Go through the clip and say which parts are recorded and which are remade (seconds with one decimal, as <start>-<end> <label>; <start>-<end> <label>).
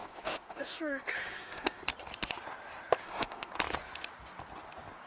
0.0-1.8 remade; 1.8-3.0 recorded; 3.0-3.5 remade; 3.5-5.1 recorded